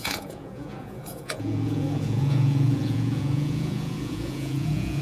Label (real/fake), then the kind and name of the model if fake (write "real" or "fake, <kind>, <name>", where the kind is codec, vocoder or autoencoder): fake, vocoder, Vocos